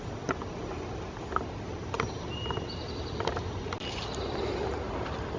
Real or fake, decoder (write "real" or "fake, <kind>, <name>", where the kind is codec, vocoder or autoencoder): real